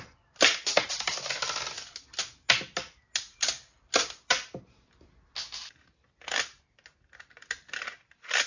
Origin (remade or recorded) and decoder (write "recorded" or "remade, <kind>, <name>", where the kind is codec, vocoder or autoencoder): recorded